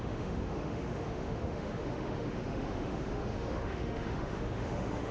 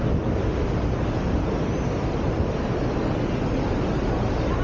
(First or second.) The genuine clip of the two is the second